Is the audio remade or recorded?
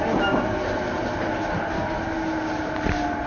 recorded